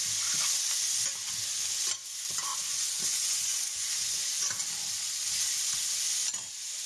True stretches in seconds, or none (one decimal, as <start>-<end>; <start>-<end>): 0.0-2.5; 4.5-6.9